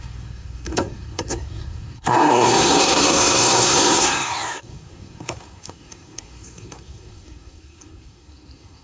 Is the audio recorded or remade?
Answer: remade